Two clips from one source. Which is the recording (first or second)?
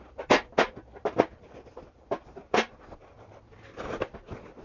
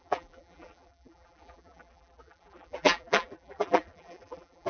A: first